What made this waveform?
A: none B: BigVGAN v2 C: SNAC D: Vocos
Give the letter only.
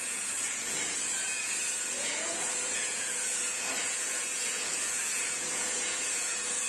D